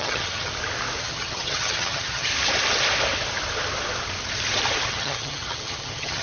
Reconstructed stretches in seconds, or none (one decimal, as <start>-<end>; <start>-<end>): 0.0-0.5; 1.0-2.3; 4.9-6.2